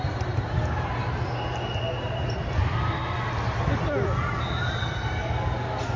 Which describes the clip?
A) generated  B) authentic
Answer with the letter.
B